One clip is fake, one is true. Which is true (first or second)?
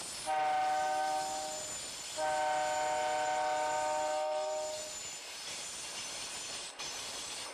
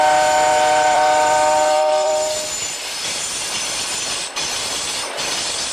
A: first